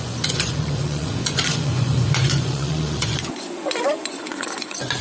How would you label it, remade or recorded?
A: remade